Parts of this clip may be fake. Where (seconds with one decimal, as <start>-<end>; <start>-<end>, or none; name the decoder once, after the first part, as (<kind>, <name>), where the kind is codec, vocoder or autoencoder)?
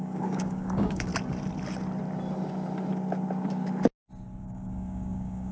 0.0-1.1 (codec, DAC); 4.4-5.5